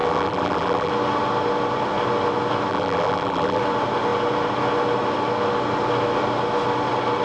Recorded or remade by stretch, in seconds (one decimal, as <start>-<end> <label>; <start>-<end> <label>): 0.0-0.9 remade; 0.9-2.7 recorded; 2.7-3.6 remade; 3.6-7.2 recorded